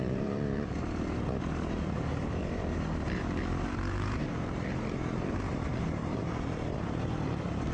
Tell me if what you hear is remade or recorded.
remade